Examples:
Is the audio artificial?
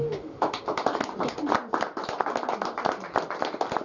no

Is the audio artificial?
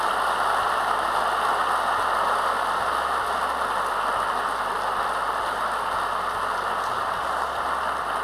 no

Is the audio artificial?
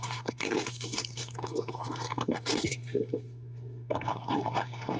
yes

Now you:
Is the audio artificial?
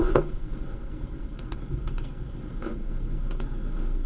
yes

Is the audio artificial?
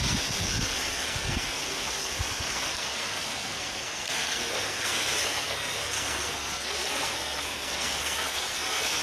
yes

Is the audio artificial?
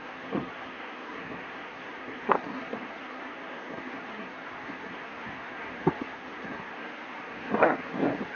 yes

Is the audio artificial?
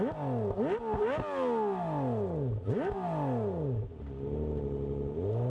no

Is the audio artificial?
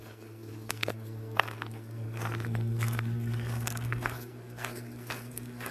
yes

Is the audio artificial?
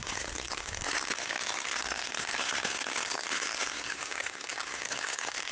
yes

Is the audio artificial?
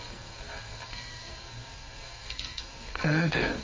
yes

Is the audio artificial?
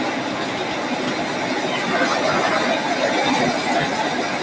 no